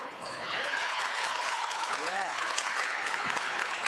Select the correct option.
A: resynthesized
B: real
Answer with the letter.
A